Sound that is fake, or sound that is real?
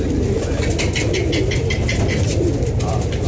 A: real